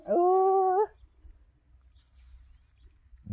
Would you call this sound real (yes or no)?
yes